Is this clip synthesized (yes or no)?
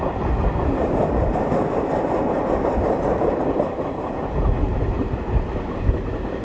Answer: no